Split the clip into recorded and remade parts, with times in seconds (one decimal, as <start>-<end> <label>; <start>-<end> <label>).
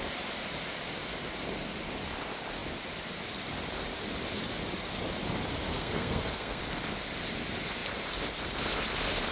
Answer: 0.0-5.7 recorded; 5.7-6.6 remade; 6.6-9.3 recorded